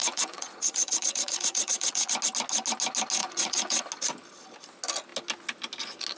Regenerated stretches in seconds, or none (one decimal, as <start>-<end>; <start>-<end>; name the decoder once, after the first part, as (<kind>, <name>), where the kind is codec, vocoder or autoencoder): 0.0-2.1 (vocoder, Vocos); 3.2-3.8